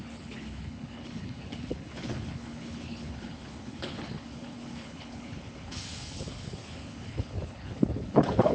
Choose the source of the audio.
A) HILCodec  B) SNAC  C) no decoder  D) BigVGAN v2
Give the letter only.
A